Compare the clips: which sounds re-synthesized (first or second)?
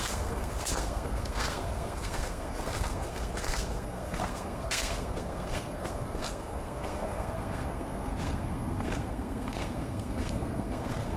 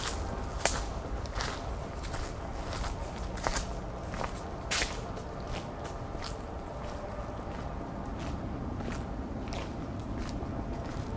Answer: first